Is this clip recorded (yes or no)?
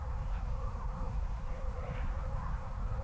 no